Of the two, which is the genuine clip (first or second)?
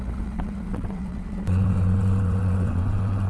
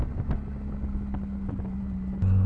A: second